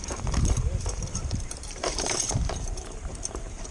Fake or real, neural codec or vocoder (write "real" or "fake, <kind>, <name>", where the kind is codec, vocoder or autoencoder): fake, vocoder, BigVGAN v2